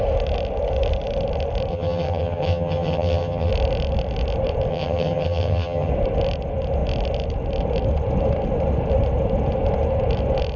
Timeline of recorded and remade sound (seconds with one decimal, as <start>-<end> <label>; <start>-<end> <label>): 0.0-1.7 recorded; 1.7-3.5 remade; 3.5-4.7 recorded; 4.7-5.9 remade; 5.9-10.6 recorded